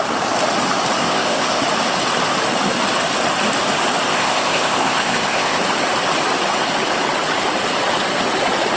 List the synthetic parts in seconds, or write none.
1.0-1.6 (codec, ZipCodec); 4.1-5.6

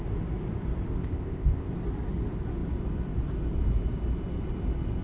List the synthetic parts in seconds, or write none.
0.9-1.7 (codec, ZipCodec)

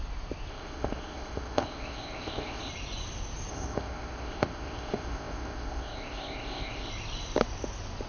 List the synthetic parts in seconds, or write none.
0.5-2.7 (codec, ZipCodec); 3.5-6.9

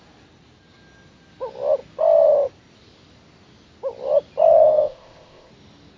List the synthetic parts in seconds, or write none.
4.5-5.5 (codec, ZipCodec)